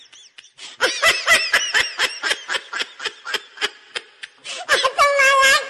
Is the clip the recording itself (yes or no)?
yes